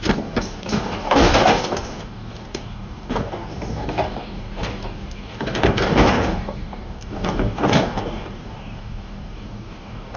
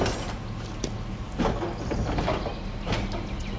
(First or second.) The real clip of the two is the second